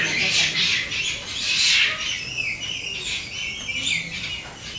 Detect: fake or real real